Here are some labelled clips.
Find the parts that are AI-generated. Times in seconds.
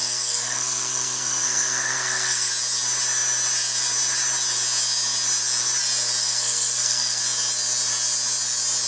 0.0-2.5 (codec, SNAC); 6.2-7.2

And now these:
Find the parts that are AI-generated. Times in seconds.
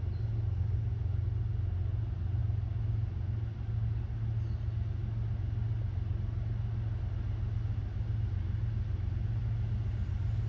none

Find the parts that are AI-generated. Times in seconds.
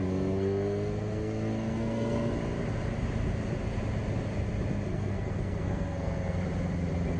0.0-2.3 (codec, SNAC); 4.9-6.4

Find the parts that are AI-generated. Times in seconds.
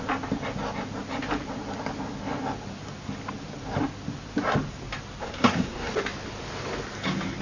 5.2-5.9 (codec, SNAC)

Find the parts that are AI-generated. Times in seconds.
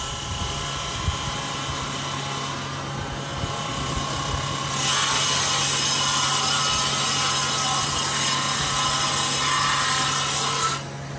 none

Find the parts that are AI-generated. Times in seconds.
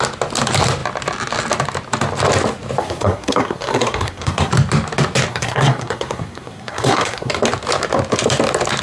2.8-4.5 (codec, SNAC); 5.3-7.3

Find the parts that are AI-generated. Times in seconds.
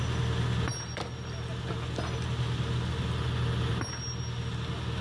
none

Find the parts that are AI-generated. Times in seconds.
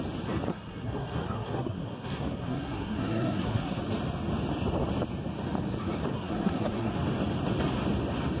0.5-3.8 (codec, SNAC); 6.1-6.9